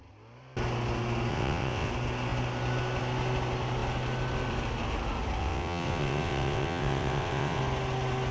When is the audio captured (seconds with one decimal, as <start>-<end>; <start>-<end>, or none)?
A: 0.0-1.3; 1.9-5.4; 7.6-8.3